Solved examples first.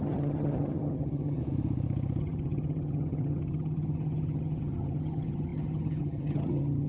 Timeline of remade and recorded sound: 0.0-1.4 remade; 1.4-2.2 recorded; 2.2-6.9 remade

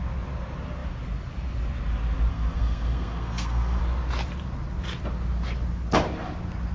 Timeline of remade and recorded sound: 0.0-2.3 recorded; 2.3-3.8 remade; 3.8-6.7 recorded

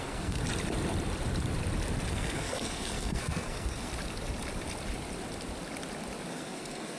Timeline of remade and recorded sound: 0.0-0.4 remade; 0.4-2.1 recorded; 2.1-3.9 remade; 3.9-6.3 recorded; 6.3-7.0 remade

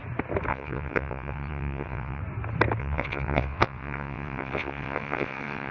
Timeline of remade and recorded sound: 0.0-0.5 recorded; 0.5-2.2 remade; 2.2-2.8 recorded; 2.8-5.7 remade

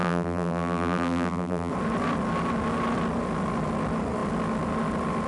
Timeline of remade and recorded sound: 0.0-1.7 remade; 1.7-5.3 recorded

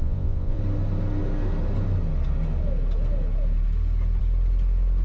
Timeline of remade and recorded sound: 0.0-0.6 remade; 0.6-5.0 recorded

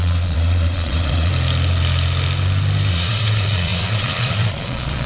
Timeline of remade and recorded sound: 0.0-1.3 remade; 1.3-2.9 recorded; 2.9-5.1 remade

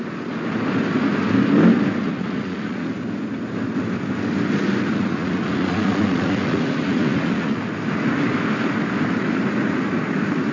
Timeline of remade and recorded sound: 0.0-2.0 recorded; 2.0-2.9 remade; 2.9-4.9 recorded; 4.9-7.6 remade; 7.6-10.5 recorded